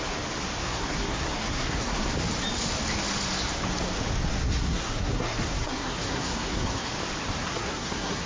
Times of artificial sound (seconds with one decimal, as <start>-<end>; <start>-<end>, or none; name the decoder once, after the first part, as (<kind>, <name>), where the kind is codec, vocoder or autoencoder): 0.6-2.1 (codec, SNAC); 4.3-6.9; 7.4-8.3